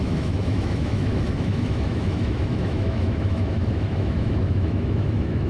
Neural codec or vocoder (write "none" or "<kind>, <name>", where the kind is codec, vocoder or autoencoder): autoencoder, DAC-VAE